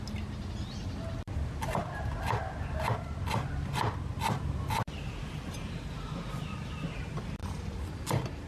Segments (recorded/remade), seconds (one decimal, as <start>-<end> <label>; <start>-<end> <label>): 0.0-8.5 recorded